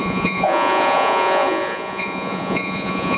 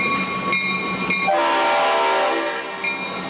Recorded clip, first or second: second